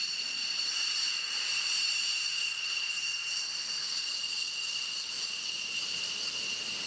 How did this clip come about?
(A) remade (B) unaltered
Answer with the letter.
A